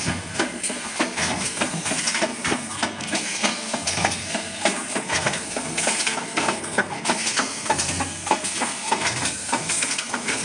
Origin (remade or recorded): remade